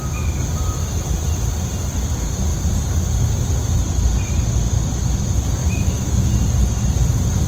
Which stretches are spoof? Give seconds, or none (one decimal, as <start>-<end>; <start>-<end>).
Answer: 5.6-6.3